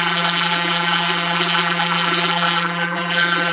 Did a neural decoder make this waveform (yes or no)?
yes